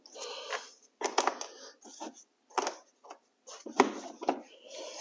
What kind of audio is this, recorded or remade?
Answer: recorded